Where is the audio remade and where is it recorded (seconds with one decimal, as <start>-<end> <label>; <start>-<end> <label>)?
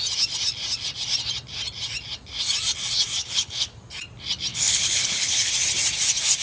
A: 0.0-3.2 recorded; 3.2-3.7 remade; 3.7-4.5 recorded; 4.5-5.5 remade; 5.5-6.4 recorded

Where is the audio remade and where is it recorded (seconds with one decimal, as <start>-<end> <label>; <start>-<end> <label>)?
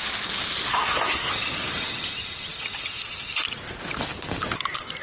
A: 0.0-0.7 recorded; 0.7-1.3 remade; 1.3-5.0 recorded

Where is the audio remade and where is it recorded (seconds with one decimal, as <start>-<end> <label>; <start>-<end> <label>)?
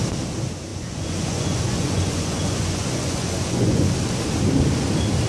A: 0.0-0.7 recorded; 0.7-3.9 remade; 3.9-5.3 recorded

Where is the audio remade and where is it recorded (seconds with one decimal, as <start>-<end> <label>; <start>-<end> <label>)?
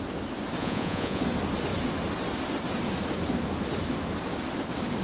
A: 0.0-0.6 recorded; 0.6-1.2 remade; 1.2-5.0 recorded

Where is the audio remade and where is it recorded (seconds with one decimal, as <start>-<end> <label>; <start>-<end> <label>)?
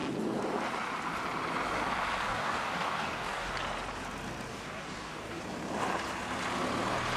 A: 0.0-2.3 recorded; 2.3-3.5 remade; 3.5-4.5 recorded; 4.5-5.4 remade; 5.4-7.2 recorded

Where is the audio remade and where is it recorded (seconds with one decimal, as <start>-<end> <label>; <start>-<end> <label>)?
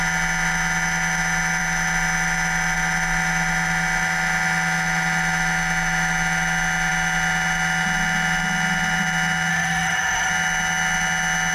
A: 0.0-9.5 recorded; 9.5-10.3 remade; 10.3-11.5 recorded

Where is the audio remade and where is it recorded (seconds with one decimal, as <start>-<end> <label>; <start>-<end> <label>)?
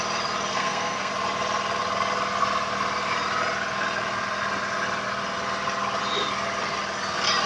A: 0.0-0.5 recorded; 0.5-1.1 remade; 1.1-7.5 recorded